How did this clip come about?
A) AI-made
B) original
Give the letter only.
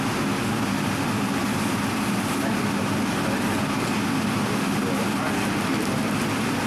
B